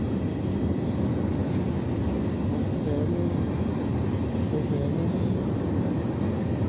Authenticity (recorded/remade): recorded